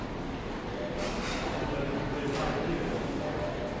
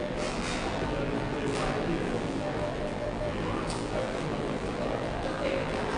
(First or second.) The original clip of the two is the first